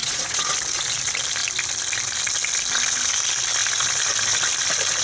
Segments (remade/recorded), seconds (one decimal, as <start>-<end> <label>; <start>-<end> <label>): 0.0-0.5 remade; 0.5-5.0 recorded